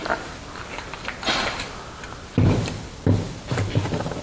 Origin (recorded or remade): recorded